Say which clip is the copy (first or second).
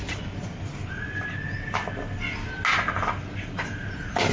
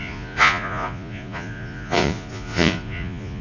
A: second